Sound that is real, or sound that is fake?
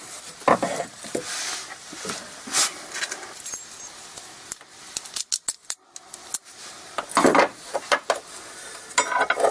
real